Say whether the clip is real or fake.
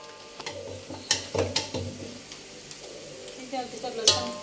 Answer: real